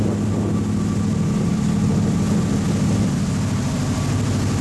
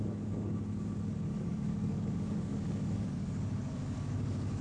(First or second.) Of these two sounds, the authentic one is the first